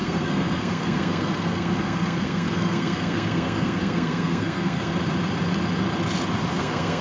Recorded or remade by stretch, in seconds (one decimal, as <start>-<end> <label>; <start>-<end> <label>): 0.0-4.9 remade; 4.9-6.5 recorded; 6.5-7.0 remade